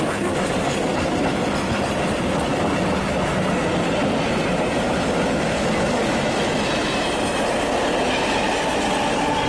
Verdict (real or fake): real